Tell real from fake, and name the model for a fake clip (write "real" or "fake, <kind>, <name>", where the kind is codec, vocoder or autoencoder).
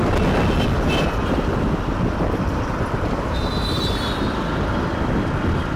real